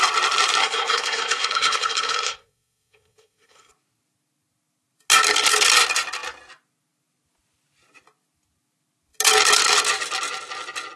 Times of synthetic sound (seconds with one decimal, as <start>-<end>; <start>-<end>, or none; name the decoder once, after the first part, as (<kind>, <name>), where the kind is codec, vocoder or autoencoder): 0.6-3.7 (codec, SNAC)